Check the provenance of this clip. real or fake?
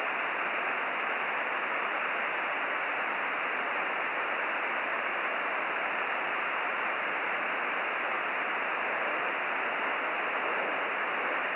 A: real